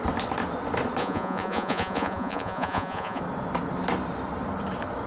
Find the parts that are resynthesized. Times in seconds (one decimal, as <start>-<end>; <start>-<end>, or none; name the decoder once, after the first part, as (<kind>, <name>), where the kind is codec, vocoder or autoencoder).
1.0-3.2 (vocoder, Vocos)